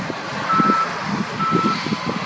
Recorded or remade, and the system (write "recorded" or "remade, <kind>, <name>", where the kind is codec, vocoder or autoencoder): remade, vocoder, BigVGAN v2